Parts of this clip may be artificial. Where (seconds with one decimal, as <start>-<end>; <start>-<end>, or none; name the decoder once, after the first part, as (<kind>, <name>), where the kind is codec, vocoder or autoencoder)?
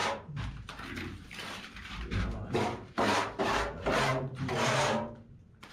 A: 0.0-3.4 (vocoder, BigVGAN v2); 4.1-4.7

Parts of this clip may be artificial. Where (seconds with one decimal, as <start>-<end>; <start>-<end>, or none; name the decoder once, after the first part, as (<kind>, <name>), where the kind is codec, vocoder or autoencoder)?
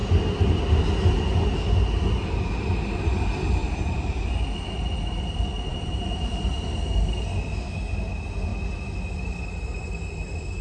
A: 3.6-4.2 (vocoder, BigVGAN v2); 5.7-6.5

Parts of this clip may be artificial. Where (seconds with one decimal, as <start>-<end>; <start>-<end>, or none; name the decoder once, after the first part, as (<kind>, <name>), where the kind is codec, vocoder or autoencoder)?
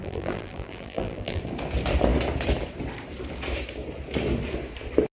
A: 0.0-1.4 (vocoder, BigVGAN v2)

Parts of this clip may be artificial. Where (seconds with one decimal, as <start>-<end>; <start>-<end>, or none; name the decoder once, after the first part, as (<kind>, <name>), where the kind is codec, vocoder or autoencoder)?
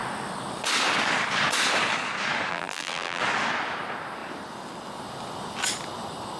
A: 2.5-3.2 (vocoder, BigVGAN v2)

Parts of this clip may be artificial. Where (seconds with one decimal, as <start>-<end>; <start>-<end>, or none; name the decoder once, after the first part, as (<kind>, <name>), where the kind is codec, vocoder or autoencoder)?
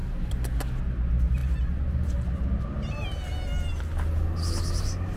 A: none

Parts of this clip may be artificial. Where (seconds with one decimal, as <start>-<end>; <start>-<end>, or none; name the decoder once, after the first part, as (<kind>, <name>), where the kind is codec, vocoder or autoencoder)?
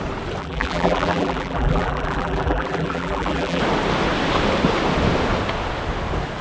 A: 0.4-3.6 (vocoder, BigVGAN v2)